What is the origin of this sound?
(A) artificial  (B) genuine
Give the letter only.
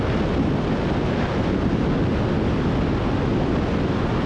B